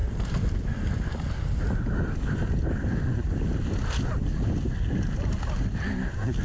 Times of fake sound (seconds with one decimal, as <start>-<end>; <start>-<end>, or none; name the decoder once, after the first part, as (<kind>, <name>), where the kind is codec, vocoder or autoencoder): none